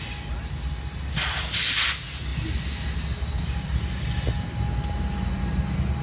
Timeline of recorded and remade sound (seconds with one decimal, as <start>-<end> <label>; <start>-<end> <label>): 0.0-6.0 recorded